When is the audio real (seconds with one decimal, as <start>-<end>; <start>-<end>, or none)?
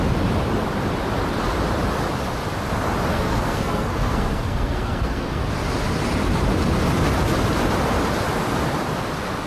0.0-3.1; 5.5-9.5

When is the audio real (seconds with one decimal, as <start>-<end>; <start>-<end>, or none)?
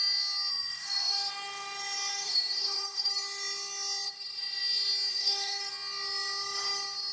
0.0-0.5; 1.3-2.1; 3.1-5.1; 5.7-7.1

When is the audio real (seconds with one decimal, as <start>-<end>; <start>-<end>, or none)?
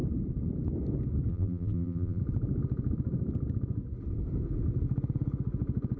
0.0-1.3; 2.2-6.0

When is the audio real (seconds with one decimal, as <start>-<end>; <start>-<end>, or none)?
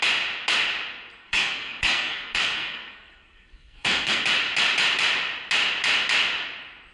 0.0-1.2; 4.2-6.9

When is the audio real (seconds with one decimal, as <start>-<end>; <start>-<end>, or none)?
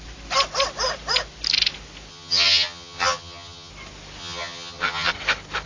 0.0-2.1; 3.7-4.2; 5.1-5.7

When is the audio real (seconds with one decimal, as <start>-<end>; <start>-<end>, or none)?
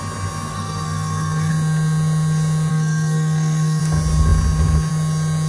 0.0-0.5; 1.5-2.7; 3.8-5.5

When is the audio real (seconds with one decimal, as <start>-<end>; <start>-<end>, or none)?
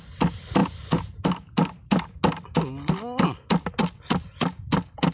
0.0-5.1